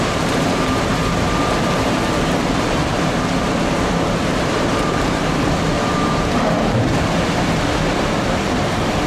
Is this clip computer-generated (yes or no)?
yes